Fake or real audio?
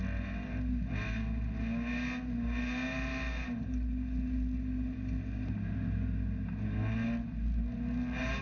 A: real